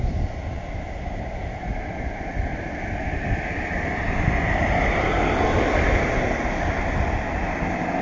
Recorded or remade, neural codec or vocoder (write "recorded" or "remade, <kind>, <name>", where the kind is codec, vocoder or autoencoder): recorded